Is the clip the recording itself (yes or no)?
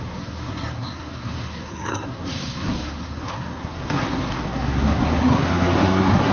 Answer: no